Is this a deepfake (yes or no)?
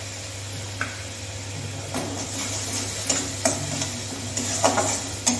no